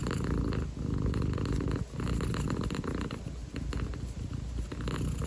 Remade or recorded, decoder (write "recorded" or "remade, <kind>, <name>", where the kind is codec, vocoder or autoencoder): recorded